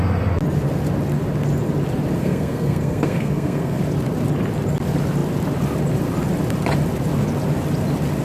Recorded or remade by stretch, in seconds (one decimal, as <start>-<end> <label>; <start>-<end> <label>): 0.0-2.2 recorded; 2.2-3.8 remade; 3.8-8.2 recorded